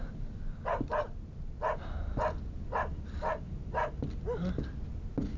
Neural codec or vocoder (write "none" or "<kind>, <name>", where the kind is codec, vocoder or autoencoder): none